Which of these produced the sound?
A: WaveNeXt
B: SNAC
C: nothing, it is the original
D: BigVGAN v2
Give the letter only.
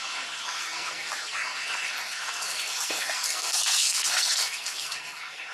B